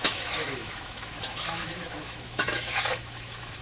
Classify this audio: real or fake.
fake